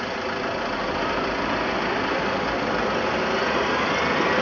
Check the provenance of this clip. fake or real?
real